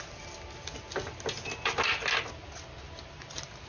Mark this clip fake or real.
real